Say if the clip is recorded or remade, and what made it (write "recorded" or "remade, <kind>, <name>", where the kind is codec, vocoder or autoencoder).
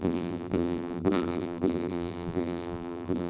remade, vocoder, BigVGAN v2